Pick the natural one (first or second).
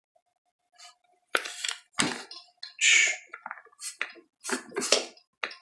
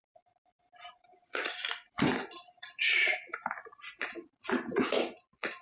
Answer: first